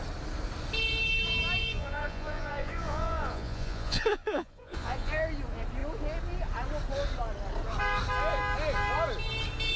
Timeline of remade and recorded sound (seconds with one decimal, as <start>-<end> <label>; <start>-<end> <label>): 0.0-1.6 recorded; 1.6-5.1 remade; 5.1-9.8 recorded